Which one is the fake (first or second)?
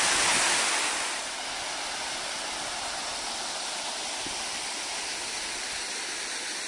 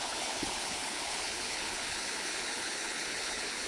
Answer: second